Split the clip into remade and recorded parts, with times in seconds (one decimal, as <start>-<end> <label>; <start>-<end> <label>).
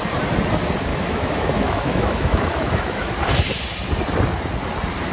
0.0-0.9 recorded; 0.9-3.1 remade; 3.1-5.1 recorded